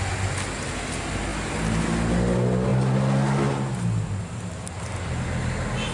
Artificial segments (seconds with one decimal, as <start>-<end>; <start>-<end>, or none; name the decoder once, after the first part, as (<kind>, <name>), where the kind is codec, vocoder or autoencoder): none